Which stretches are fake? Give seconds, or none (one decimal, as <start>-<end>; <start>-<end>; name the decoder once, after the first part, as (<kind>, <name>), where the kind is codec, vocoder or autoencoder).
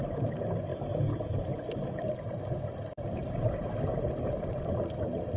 0.7-3.0 (vocoder, BigVGAN v2); 3.9-4.5